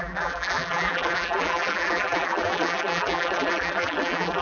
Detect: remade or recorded remade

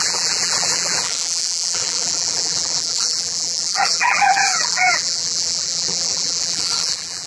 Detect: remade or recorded remade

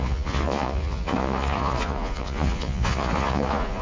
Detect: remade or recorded remade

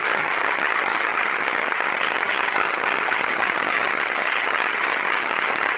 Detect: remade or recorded remade